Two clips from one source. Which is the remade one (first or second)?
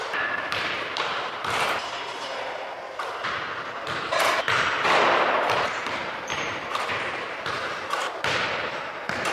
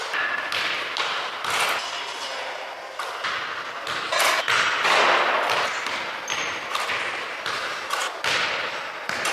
first